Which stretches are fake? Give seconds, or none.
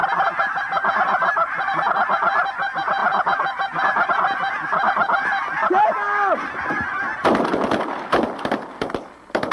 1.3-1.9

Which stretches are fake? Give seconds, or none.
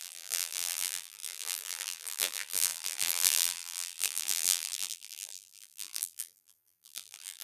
0.0-7.4